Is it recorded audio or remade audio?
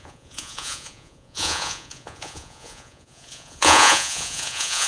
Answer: remade